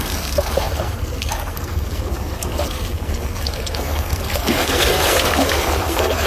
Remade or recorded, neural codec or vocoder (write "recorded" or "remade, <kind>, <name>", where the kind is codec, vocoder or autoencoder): remade, codec, SNAC